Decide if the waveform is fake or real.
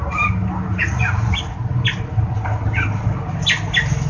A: real